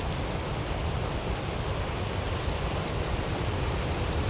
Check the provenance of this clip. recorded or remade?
recorded